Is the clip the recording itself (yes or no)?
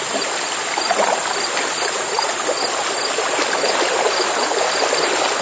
yes